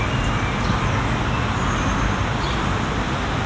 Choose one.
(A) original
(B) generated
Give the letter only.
A